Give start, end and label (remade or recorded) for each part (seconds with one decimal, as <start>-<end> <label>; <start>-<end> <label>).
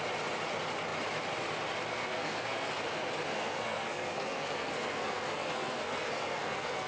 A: 0.0-1.9 recorded; 1.9-2.7 remade; 2.7-3.3 recorded; 3.3-6.9 remade